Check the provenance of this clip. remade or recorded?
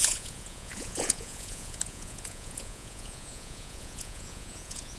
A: remade